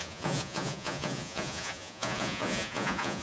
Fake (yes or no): yes